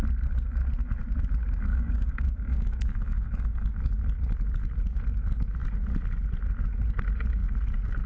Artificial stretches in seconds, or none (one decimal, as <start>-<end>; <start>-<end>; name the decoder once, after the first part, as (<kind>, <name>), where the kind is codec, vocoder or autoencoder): 1.7-3.7 (codec, DAC)

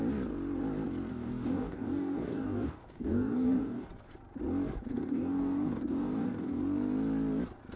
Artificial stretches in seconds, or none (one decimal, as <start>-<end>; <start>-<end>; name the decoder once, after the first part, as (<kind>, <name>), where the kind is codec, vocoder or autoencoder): 1.1-3.9 (codec, DAC); 4.9-6.6

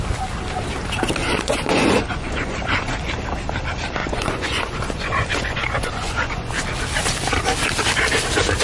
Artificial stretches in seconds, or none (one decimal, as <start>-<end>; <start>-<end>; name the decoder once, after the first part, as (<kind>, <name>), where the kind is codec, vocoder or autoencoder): 1.2-2.9 (vocoder, Vocos); 4.0-6.5

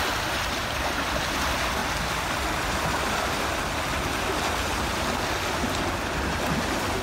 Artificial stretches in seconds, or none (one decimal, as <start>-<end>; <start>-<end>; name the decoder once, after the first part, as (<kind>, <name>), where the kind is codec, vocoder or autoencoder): none

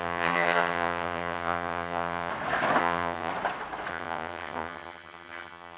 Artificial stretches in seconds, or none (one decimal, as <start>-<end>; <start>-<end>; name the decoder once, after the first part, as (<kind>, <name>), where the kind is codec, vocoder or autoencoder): 0.0-2.3 (vocoder, HiFi-GAN); 2.8-3.3; 3.9-5.8